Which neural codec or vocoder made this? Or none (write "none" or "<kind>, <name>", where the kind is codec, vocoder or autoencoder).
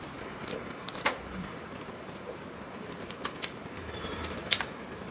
vocoder, BigVGAN v2